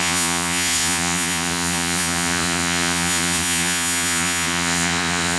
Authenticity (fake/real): fake